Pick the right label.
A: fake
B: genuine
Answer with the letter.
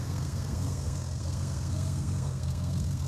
A